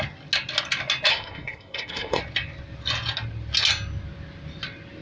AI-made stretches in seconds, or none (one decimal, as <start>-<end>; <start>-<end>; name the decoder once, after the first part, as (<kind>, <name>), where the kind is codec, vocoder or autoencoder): 1.1-2.2 (codec, SNAC)